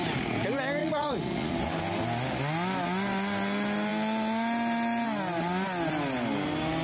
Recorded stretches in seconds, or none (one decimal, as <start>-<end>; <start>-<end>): 0.0-0.8; 1.5-6.8